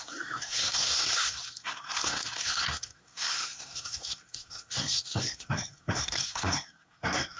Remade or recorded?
remade